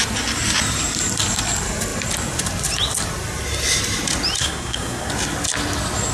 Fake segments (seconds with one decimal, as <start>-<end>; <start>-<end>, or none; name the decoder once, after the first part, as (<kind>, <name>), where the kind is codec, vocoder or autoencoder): 4.4-5.1 (codec, SNAC)